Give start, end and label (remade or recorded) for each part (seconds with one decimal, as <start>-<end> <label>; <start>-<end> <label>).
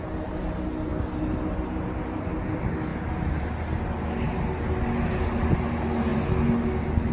0.0-7.1 recorded